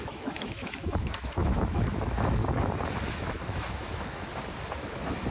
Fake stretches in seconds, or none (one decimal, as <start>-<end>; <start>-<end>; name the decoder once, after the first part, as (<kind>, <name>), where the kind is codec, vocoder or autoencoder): 0.0-2.4 (autoencoder, DAC-VAE); 3.1-4.3; 4.8-5.3